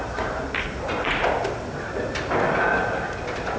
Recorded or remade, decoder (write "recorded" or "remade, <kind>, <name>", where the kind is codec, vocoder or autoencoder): recorded